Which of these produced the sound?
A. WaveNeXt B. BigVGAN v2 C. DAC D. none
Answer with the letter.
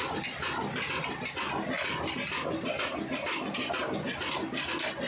D